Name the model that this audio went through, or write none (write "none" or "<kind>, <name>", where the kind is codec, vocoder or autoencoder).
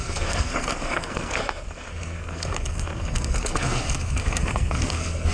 codec, SNAC